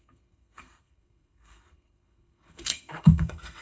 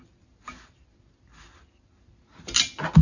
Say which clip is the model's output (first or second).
first